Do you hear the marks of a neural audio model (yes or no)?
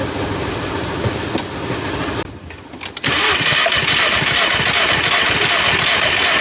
no